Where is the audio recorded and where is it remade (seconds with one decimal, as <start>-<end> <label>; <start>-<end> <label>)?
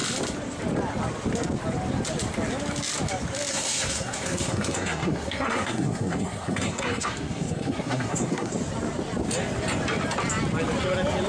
0.0-3.5 recorded; 3.5-8.5 remade; 8.5-11.3 recorded